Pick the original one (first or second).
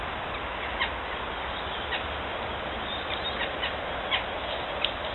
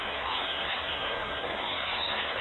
first